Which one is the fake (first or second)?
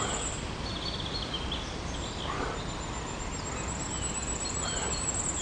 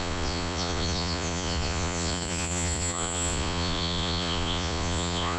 second